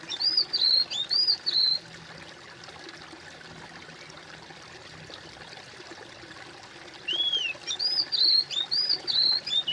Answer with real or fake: real